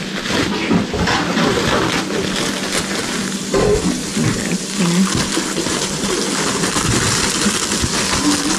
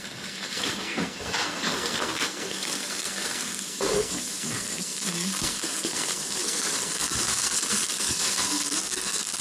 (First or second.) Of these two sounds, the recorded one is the first